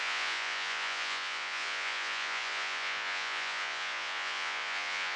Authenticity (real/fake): fake